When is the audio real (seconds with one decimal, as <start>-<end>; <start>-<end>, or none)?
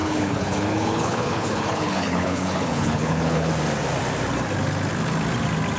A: 3.5-5.8